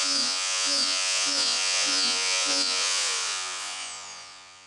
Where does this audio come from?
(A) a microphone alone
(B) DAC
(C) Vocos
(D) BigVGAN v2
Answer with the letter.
C